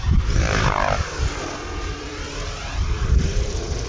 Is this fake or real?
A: fake